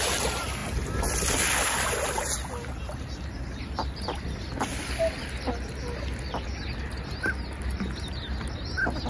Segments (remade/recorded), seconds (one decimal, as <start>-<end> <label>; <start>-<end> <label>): 0.0-9.1 recorded